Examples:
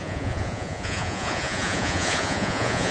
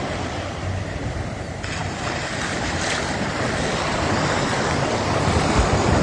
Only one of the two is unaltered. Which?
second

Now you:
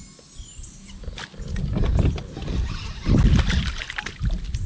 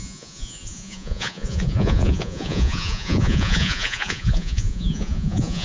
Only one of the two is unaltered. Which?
first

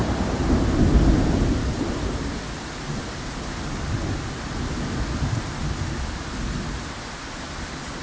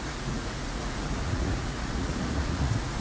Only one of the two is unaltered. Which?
first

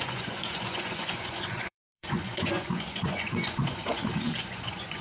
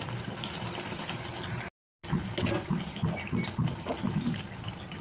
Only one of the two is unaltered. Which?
second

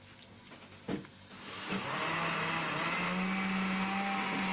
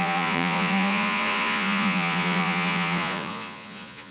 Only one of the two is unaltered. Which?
first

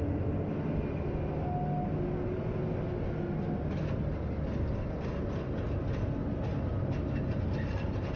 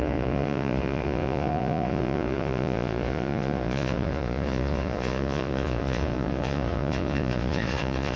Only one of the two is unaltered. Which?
first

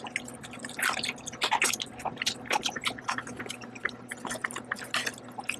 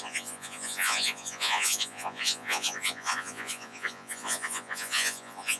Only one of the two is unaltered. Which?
first